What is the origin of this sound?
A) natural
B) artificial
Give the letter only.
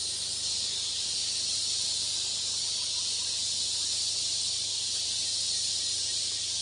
A